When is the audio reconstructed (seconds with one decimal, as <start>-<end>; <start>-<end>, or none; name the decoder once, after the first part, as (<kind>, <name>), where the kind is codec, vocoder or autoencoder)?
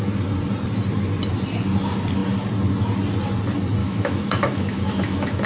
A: 3.8-5.5 (autoencoder, DAC-VAE)